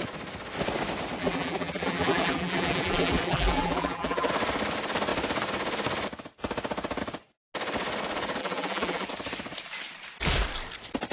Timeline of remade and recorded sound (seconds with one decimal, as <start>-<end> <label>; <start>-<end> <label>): 0.0-1.2 recorded; 1.2-4.3 remade; 4.3-8.4 recorded; 8.4-9.1 remade; 9.1-11.1 recorded